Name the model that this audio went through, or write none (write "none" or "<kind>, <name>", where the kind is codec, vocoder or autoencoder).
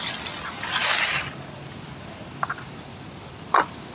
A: none